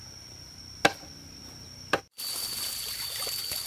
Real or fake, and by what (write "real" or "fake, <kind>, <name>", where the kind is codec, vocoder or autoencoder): real